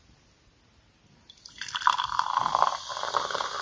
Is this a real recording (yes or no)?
yes